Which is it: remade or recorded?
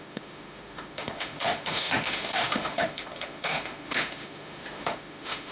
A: remade